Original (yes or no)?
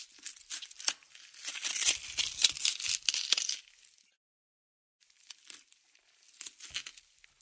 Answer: yes